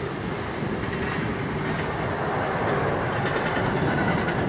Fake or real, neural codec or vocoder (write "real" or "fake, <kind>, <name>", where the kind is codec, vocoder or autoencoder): real